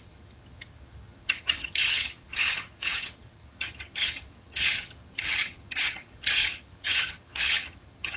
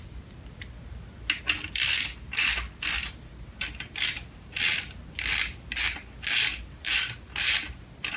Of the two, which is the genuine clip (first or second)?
second